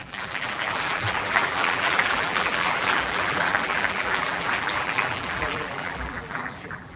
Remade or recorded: remade